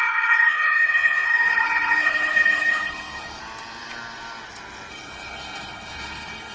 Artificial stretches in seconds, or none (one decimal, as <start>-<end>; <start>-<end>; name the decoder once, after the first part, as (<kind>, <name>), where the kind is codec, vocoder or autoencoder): 0.0-3.4 (codec, HILCodec); 4.9-6.5